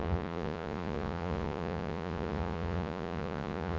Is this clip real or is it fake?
fake